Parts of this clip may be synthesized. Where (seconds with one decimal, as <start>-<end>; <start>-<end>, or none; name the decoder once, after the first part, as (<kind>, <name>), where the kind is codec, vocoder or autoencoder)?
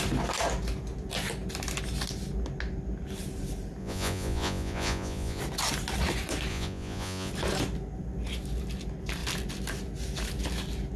3.8-5.4 (vocoder, Vocos); 6.5-7.3